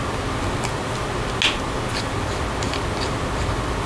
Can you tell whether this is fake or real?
real